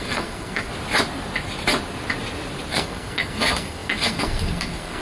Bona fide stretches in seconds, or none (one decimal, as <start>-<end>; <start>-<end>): 0.7-2.7